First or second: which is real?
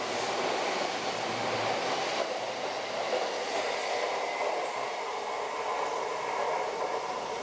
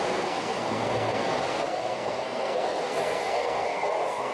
first